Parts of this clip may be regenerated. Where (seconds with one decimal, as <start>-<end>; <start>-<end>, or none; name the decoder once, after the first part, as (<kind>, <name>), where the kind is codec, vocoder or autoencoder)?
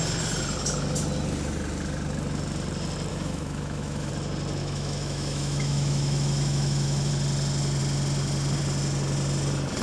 3.1-4.1 (autoencoder, DAC-VAE); 4.6-7.1